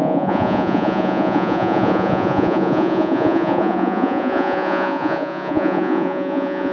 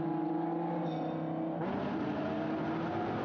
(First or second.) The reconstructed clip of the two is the first